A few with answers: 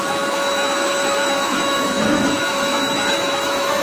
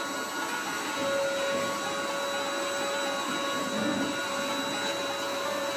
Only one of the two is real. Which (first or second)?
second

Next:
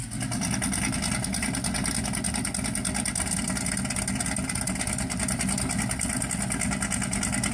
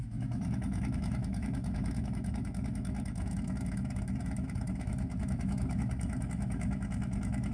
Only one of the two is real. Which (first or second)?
first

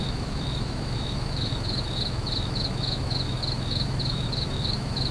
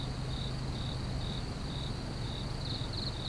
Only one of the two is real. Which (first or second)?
second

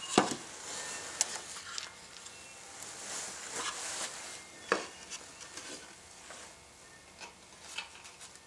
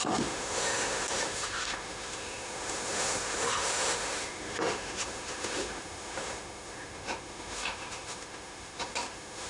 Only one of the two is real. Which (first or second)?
first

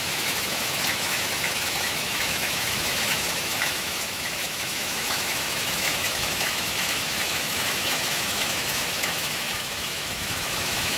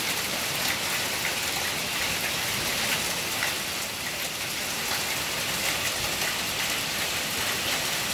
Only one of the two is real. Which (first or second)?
second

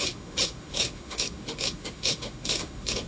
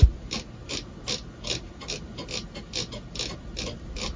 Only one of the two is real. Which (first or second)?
second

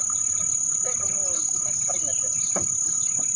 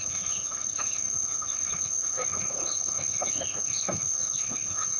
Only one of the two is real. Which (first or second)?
first